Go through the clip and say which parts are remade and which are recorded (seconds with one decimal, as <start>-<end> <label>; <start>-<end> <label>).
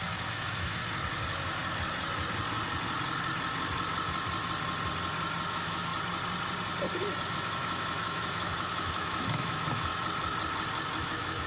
0.0-0.8 remade; 0.8-5.5 recorded; 5.5-5.9 remade; 5.9-7.3 recorded; 7.3-9.9 remade; 9.9-11.0 recorded; 11.0-11.5 remade